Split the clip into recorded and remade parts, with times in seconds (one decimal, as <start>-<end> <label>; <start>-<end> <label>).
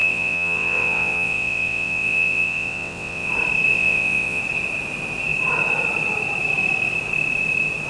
0.0-3.3 remade; 3.3-3.7 recorded; 3.7-4.4 remade; 4.4-7.9 recorded